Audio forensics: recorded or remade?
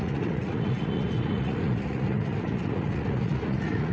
remade